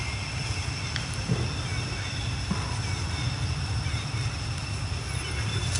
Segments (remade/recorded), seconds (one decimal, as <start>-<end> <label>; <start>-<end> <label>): 0.0-5.8 recorded